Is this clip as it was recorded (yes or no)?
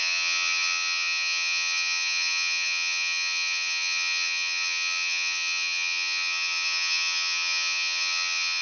no